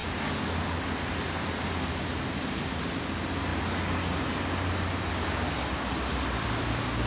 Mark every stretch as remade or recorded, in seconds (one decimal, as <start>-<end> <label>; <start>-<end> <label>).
0.0-7.1 recorded